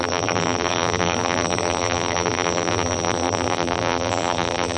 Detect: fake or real fake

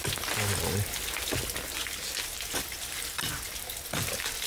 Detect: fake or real real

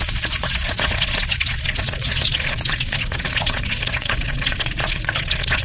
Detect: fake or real fake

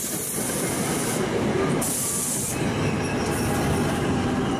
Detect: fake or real real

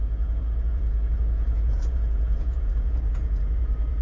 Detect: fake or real fake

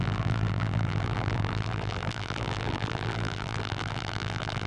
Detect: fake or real fake